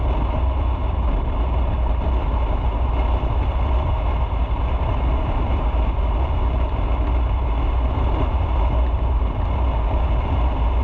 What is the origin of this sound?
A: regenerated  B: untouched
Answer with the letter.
B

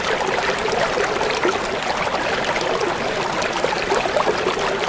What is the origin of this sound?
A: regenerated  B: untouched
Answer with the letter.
B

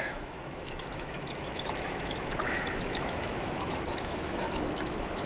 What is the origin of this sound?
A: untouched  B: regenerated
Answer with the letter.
B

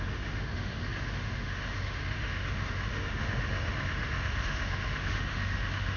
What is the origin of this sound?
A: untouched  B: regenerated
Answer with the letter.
B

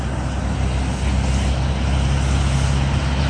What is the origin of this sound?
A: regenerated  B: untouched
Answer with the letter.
B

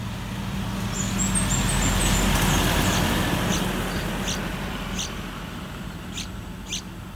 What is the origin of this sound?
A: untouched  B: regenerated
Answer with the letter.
A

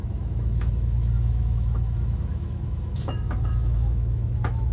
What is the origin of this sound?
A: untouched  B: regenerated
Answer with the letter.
B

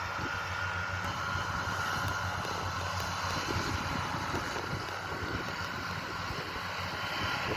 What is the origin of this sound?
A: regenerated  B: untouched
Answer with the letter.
B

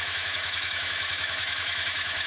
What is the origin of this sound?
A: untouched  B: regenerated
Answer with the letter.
B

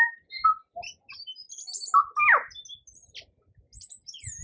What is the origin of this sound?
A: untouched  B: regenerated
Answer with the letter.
A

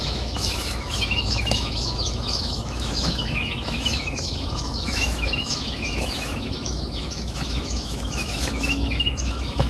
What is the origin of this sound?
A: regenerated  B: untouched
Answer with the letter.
A